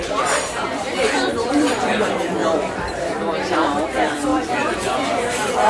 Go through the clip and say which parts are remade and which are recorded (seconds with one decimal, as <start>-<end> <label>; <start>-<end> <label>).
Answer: 0.0-5.7 remade